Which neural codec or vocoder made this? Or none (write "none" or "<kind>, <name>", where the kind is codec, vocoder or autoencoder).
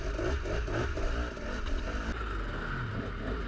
none